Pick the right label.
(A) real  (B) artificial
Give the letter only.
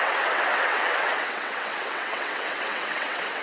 B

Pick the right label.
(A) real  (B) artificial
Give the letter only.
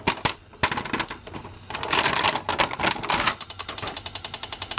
A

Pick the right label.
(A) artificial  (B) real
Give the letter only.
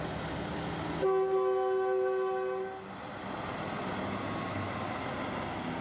B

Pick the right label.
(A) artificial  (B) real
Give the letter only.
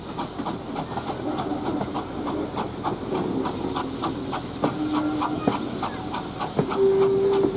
B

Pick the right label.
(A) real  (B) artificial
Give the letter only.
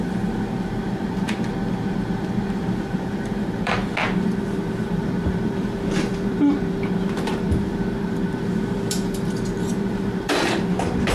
B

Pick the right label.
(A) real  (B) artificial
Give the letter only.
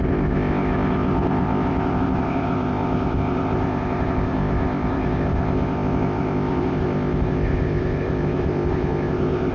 B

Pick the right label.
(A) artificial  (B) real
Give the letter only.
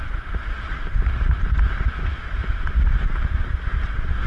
B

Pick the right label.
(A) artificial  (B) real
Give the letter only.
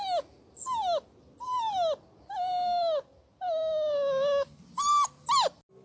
B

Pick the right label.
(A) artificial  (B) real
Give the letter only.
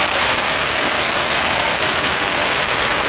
A